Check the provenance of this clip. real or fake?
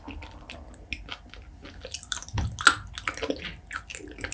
real